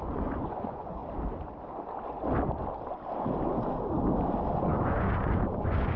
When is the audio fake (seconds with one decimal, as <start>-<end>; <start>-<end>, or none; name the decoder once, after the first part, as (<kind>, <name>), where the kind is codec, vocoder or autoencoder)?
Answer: 0.0-1.0 (vocoder, Vocos); 4.6-6.0